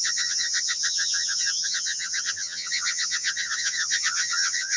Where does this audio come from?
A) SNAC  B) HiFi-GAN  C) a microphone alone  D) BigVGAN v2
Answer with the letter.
B